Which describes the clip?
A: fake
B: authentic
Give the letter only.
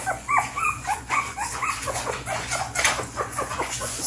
A